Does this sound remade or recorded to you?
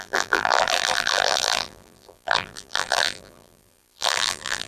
remade